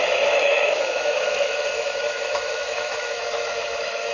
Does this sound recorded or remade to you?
remade